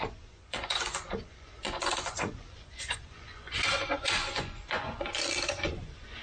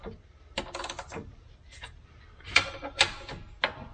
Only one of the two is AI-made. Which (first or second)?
first